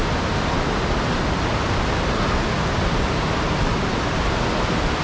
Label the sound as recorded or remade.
recorded